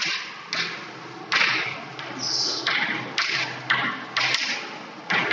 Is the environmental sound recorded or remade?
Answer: recorded